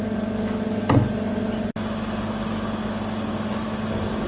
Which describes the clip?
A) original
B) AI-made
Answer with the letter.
A